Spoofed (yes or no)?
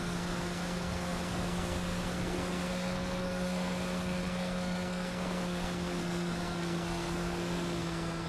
yes